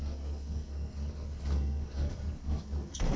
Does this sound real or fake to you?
fake